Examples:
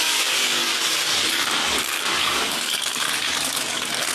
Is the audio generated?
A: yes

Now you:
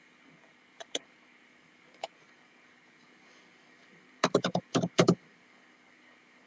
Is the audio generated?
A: yes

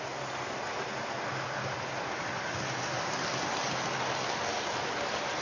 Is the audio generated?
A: no